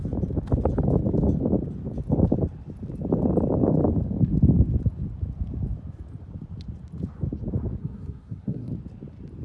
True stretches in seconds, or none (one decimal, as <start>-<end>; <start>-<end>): 0.0-7.8; 8.7-9.4